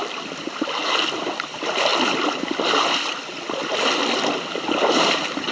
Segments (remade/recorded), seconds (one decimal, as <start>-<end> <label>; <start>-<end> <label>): 0.0-5.5 recorded